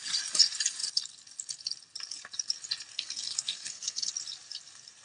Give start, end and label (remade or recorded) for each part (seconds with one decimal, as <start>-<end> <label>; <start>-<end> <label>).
0.0-2.9 recorded; 2.9-4.1 remade; 4.1-5.0 recorded